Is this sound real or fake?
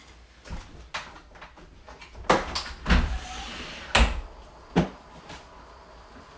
real